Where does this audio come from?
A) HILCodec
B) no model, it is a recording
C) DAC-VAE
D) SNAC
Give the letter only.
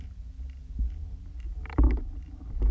B